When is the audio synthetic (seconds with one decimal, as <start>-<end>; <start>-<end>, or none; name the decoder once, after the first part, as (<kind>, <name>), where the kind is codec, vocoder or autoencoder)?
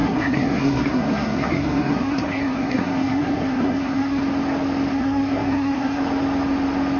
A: 0.0-4.2 (codec, SNAC); 4.9-6.0